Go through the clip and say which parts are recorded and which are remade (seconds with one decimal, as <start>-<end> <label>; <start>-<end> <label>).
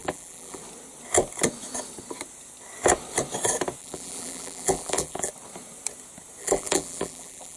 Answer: 0.0-0.6 remade; 0.6-3.8 recorded; 3.8-5.3 remade; 5.3-6.4 recorded; 6.4-7.6 remade